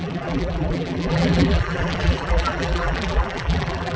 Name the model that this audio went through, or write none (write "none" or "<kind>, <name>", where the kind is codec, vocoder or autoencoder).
vocoder, BigVGAN v2